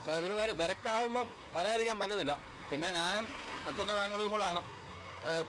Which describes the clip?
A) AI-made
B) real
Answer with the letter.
A